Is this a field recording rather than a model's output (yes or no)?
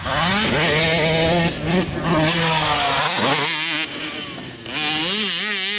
yes